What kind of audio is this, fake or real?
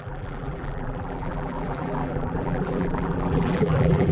fake